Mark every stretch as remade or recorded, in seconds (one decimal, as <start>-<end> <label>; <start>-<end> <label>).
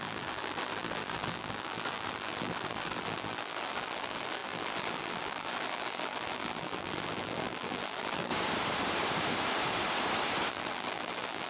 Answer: 0.0-8.3 remade; 8.3-10.5 recorded; 10.5-11.5 remade